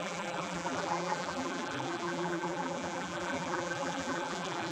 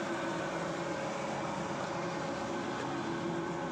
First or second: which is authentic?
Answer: second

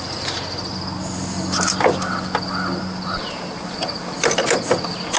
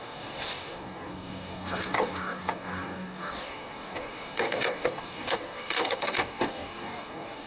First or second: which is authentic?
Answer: first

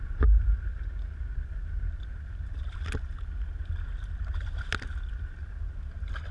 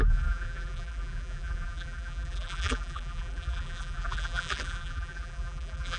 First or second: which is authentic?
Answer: first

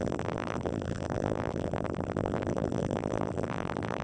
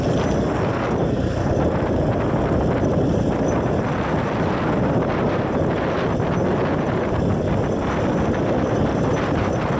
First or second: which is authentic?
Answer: second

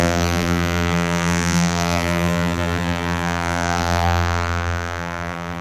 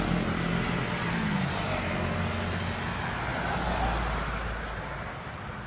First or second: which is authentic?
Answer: second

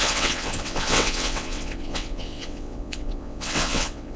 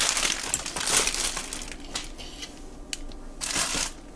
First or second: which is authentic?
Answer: second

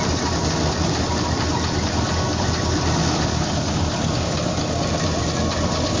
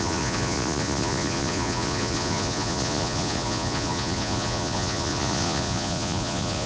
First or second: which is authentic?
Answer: first